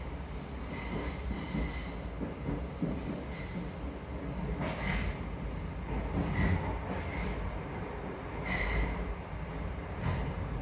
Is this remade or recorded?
recorded